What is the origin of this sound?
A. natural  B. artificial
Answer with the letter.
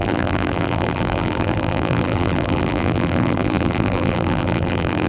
B